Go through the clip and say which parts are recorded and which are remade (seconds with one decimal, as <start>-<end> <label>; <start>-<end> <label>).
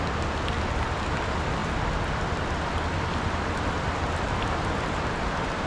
0.0-5.7 recorded